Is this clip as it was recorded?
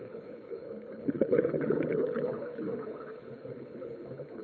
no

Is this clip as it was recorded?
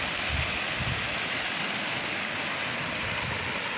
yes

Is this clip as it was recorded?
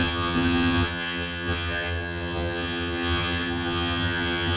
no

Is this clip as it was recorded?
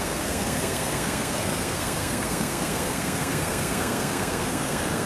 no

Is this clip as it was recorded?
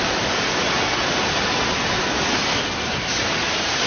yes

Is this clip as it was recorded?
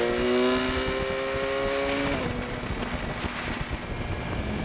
yes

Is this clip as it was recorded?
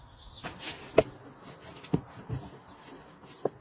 yes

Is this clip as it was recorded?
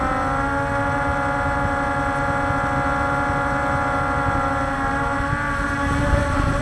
yes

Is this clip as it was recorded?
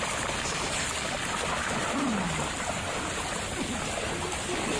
yes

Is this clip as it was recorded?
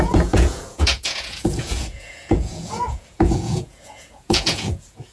no